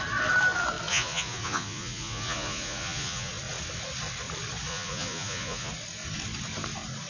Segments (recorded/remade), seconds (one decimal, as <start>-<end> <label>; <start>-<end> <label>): 0.0-0.9 recorded; 0.9-3.3 remade; 3.3-4.7 recorded; 4.7-5.7 remade; 5.7-7.1 recorded